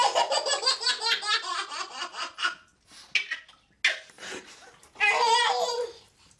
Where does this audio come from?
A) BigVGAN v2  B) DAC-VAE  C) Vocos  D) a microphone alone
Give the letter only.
D